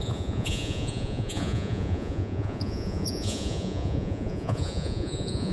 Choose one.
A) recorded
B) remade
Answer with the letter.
B